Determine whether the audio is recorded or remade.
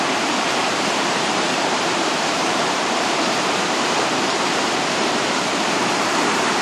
remade